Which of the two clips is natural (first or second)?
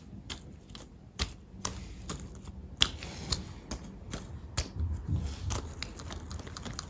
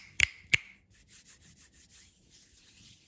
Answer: first